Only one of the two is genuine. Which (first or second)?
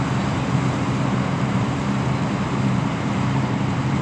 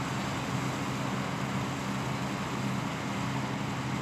second